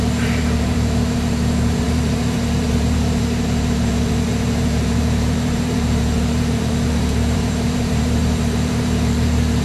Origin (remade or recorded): remade